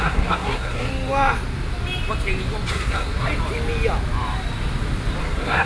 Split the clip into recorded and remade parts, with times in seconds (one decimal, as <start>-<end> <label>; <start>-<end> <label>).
0.0-0.9 remade; 0.9-2.7 recorded; 2.7-3.3 remade; 3.3-5.2 recorded; 5.2-5.7 remade